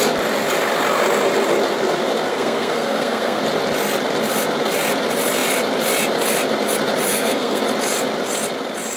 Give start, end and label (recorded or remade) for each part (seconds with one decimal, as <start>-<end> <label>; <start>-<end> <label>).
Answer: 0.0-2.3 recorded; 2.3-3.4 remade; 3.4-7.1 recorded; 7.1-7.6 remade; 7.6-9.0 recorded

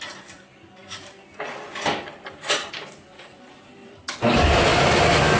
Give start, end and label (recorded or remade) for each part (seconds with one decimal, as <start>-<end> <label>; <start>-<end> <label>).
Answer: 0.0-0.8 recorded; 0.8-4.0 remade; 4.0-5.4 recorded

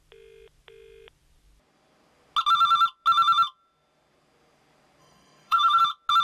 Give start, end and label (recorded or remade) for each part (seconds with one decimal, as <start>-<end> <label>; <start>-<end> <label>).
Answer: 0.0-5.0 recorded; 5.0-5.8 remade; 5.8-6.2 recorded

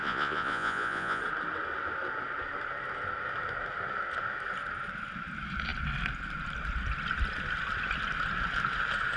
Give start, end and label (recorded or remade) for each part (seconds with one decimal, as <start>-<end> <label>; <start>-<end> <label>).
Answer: 0.0-1.2 remade; 1.2-9.2 recorded

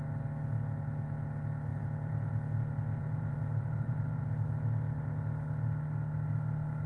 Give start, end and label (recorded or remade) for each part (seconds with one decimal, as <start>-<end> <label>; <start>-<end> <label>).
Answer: 0.0-1.7 recorded; 1.7-2.3 remade; 2.3-3.0 recorded; 3.0-4.2 remade; 4.2-6.9 recorded

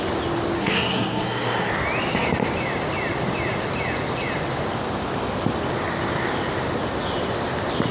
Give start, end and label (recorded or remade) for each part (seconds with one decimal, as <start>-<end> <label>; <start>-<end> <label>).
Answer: 0.0-0.6 recorded; 0.6-1.7 remade; 1.7-7.9 recorded

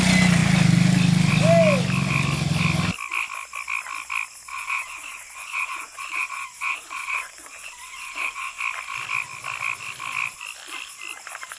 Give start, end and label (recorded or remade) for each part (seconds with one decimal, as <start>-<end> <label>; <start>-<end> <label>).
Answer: 0.0-4.5 recorded; 4.5-8.6 remade; 8.6-11.6 recorded

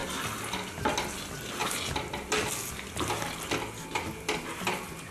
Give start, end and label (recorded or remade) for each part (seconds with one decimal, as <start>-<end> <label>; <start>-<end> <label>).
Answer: 0.0-5.1 recorded